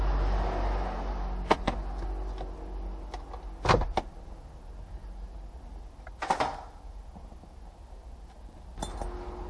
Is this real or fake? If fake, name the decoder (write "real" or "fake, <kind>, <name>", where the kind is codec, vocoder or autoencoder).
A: real